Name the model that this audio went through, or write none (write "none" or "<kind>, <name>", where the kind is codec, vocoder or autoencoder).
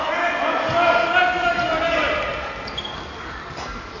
none